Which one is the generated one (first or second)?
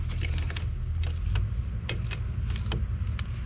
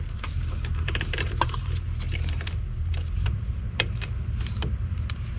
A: second